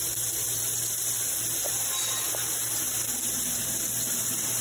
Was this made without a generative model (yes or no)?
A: yes